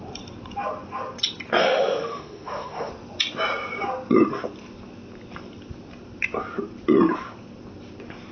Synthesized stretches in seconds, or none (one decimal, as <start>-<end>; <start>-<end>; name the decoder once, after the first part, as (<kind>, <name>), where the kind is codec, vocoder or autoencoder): 1.6-2.9 (autoencoder, DAC-VAE)